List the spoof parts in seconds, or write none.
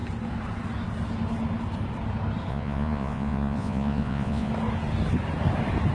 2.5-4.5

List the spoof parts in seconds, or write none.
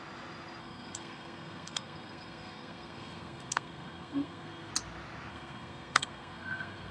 0.6-4.7; 5.3-6.9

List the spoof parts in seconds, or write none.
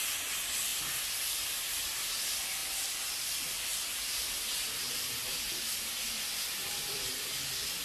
0.7-1.7; 2.6-5.3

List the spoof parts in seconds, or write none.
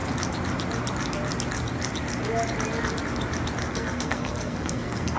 3.6-5.2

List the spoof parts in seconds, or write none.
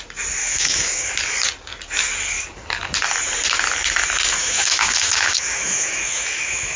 0.4-1.1; 4.4-6.8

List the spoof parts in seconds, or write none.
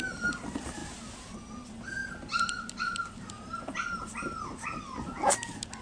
none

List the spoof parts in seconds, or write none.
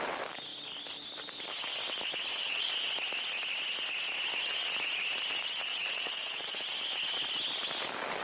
2.3-2.9; 5.7-6.6